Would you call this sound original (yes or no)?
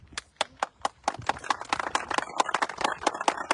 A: yes